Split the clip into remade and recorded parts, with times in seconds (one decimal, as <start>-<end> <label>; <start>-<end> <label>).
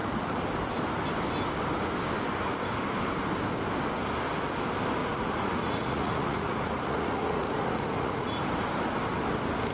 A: 0.0-0.5 remade; 0.5-5.0 recorded; 5.0-8.4 remade; 8.4-9.7 recorded